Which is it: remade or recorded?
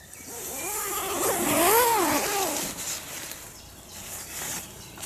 recorded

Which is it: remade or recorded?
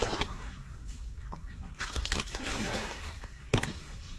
remade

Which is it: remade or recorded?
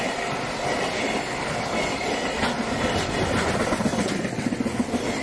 recorded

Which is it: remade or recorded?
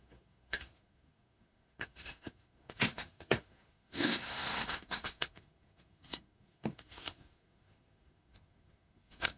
remade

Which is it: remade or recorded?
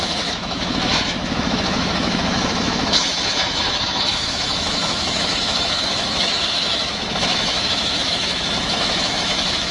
remade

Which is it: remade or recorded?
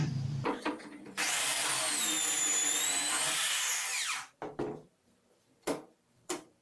remade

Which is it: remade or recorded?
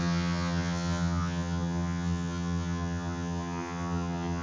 remade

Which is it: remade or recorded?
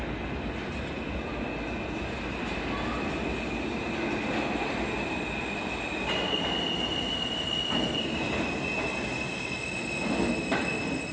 recorded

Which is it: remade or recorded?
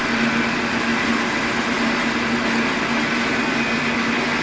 recorded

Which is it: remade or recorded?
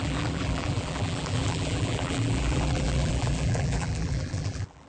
remade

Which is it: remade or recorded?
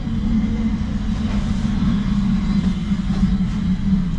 recorded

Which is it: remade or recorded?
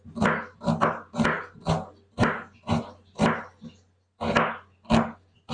recorded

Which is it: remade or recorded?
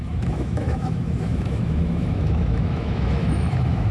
remade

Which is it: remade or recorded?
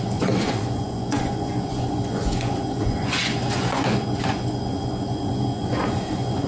remade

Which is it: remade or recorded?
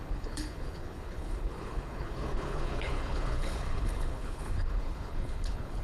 remade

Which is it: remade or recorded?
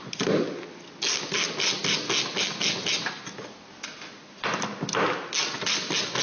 recorded